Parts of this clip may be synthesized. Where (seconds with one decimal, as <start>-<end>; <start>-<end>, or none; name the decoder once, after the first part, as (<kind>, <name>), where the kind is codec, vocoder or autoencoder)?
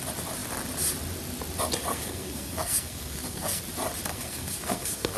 1.9-3.6 (codec, SNAC); 4.1-5.2